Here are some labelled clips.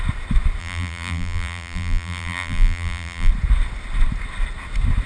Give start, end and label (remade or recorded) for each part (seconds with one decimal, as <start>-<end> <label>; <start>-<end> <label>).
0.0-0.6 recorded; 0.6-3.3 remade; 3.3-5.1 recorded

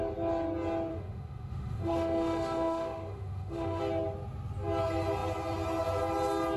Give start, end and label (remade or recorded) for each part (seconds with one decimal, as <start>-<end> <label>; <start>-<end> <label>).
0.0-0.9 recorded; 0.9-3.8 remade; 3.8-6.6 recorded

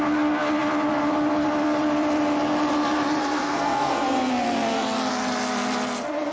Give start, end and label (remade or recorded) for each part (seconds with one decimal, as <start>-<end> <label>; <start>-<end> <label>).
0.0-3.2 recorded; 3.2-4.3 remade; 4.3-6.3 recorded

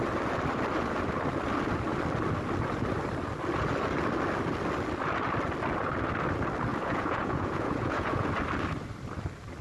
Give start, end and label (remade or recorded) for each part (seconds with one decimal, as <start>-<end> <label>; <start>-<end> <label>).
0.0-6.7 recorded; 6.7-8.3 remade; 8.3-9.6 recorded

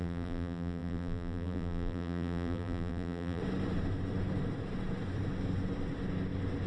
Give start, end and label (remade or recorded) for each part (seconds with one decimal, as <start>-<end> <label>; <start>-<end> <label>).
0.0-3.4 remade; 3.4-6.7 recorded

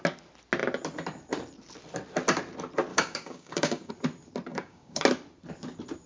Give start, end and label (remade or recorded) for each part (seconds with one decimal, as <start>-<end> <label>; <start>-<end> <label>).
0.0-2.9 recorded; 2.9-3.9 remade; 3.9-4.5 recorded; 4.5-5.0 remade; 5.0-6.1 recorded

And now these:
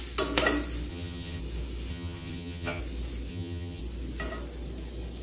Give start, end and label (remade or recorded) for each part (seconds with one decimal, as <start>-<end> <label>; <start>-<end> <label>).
0.0-0.9 recorded; 0.9-1.4 remade; 1.4-1.9 recorded; 1.9-2.8 remade; 2.8-3.3 recorded; 3.3-3.8 remade; 3.8-5.2 recorded

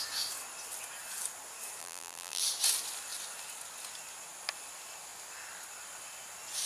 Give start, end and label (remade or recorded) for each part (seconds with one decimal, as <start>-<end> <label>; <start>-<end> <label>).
0.0-1.8 recorded; 1.8-2.4 remade; 2.4-6.7 recorded